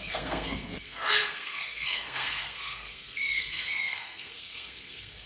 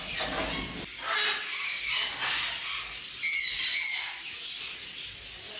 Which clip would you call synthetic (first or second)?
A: first